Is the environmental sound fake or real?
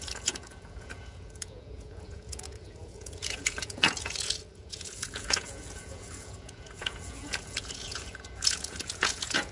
fake